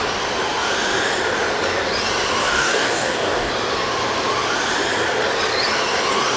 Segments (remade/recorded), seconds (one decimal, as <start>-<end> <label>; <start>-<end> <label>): 0.0-2.4 recorded; 2.4-3.5 remade; 3.5-6.4 recorded